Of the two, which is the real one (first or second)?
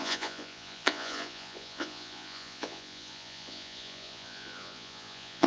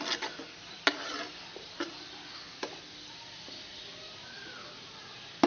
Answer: second